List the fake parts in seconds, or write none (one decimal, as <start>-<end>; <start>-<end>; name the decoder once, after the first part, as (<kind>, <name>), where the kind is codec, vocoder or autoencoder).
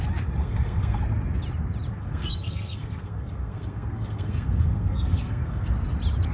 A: 0.4-1.0 (codec, SNAC); 1.9-5.7